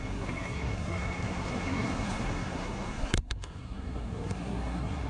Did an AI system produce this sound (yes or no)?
yes